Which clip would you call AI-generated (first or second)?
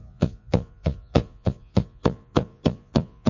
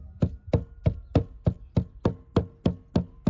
first